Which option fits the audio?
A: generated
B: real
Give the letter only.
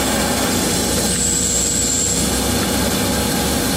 B